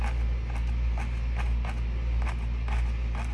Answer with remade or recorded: recorded